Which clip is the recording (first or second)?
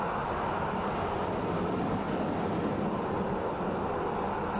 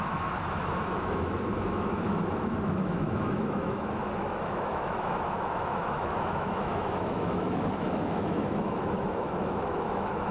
first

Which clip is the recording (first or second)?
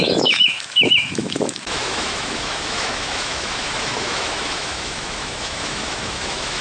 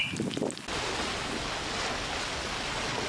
second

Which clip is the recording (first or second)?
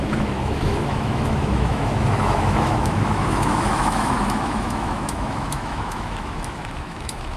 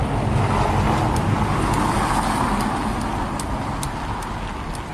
second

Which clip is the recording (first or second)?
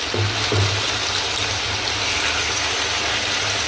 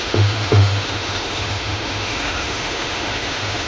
first